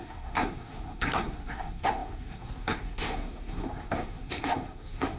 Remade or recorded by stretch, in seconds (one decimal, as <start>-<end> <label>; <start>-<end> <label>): 0.0-5.2 remade

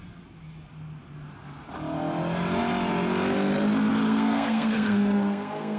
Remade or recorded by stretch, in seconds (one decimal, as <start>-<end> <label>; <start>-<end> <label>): 0.0-3.9 recorded; 3.9-5.8 remade

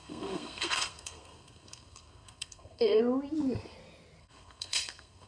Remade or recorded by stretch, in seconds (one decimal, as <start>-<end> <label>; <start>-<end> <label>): 0.0-3.0 remade; 3.0-4.2 recorded; 4.2-5.3 remade

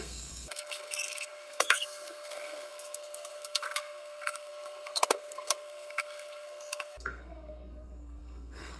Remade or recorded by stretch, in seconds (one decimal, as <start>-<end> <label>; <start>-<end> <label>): 0.0-8.8 remade

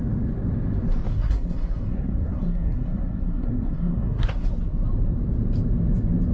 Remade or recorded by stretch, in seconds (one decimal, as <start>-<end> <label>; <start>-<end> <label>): 0.0-1.1 recorded; 1.1-4.5 remade; 4.5-6.3 recorded

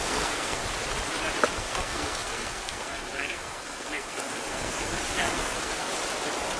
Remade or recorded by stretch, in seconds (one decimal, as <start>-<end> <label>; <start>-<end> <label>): 0.0-0.6 remade; 0.6-1.5 recorded; 1.5-5.9 remade; 5.9-6.6 recorded